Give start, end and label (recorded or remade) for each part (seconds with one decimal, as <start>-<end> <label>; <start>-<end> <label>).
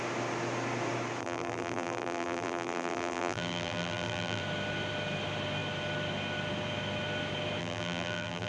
0.0-1.2 recorded; 1.2-4.4 remade; 4.4-7.6 recorded; 7.6-8.5 remade